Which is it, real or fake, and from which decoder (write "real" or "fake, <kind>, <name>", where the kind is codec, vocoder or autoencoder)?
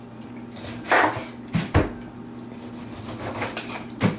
real